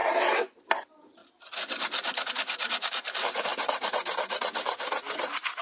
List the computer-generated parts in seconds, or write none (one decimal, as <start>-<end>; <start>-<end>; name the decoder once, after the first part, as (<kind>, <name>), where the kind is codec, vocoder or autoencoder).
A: 0.0-1.2 (vocoder, BigVGAN v2); 2.3-5.6